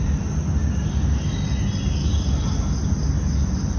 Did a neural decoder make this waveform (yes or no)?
no